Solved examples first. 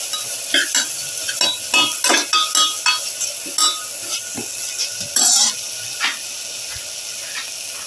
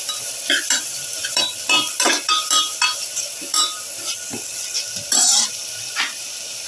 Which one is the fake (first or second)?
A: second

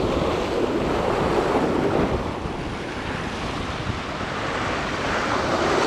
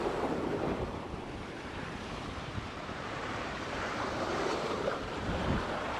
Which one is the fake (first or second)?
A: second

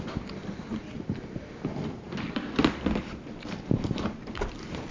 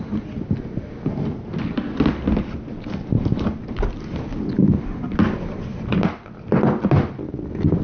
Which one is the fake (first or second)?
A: first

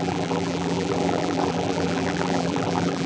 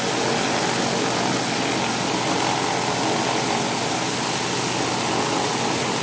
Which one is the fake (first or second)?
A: first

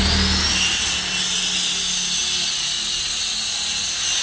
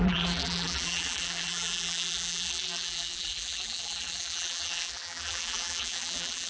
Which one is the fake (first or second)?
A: second